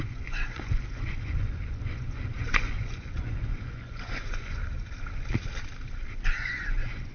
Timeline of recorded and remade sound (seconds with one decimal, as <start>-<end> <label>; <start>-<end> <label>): 0.0-4.6 remade; 4.6-6.4 recorded; 6.4-7.1 remade

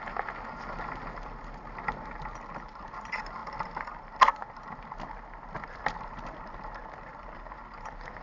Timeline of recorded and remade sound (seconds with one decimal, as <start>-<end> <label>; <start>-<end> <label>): 0.0-8.2 recorded

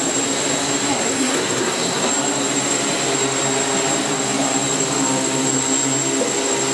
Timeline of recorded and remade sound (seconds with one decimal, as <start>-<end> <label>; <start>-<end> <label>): 0.0-0.9 recorded; 0.9-2.1 remade; 2.1-6.7 recorded

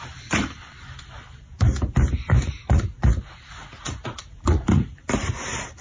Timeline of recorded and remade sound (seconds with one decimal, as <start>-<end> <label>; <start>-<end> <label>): 0.0-2.3 recorded; 2.3-5.0 remade; 5.0-5.8 recorded

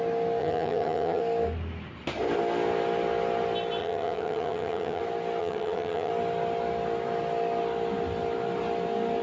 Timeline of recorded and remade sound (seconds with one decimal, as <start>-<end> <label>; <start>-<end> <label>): 0.0-0.4 recorded; 0.4-1.2 remade; 1.2-3.8 recorded; 3.8-5.0 remade; 5.0-5.4 recorded; 5.4-6.1 remade; 6.1-9.2 recorded

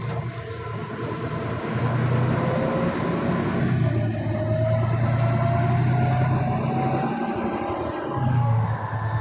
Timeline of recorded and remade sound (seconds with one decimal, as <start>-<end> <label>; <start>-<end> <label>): 0.0-8.3 recorded; 8.3-9.2 remade